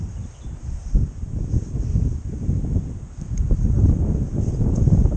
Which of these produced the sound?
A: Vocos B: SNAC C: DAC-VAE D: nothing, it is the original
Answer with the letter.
D